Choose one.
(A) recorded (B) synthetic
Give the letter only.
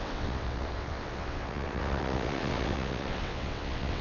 B